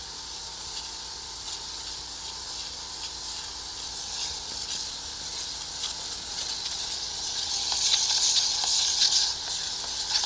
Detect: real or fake real